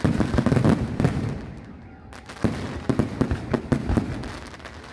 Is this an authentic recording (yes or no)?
yes